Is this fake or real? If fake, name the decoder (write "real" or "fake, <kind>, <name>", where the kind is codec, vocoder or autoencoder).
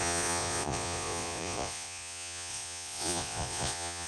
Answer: fake, vocoder, Vocos